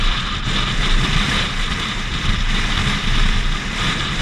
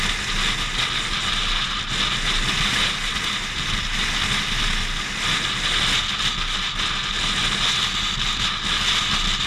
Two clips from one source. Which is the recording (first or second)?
second